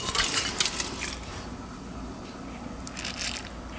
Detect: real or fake real